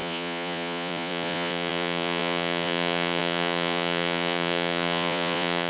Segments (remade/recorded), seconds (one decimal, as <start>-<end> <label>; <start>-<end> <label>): 0.0-5.7 remade